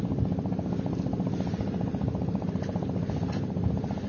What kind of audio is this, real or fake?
real